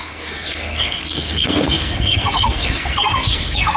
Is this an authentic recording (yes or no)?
no